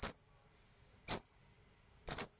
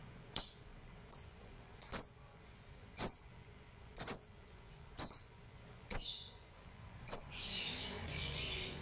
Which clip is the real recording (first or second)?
first